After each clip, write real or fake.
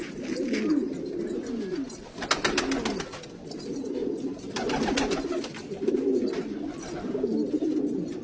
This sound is real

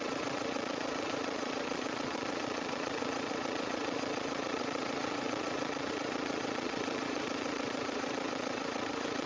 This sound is fake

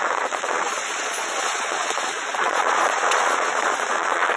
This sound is fake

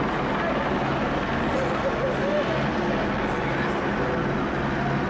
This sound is real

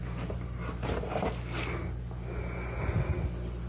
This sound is real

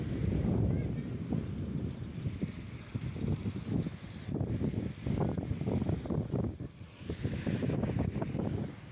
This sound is real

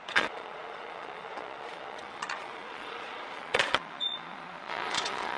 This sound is fake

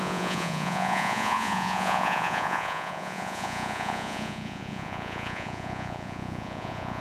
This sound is fake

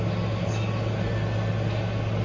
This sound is real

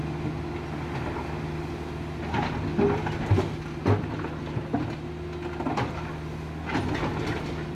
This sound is real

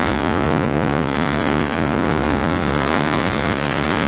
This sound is fake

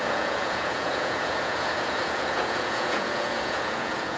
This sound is fake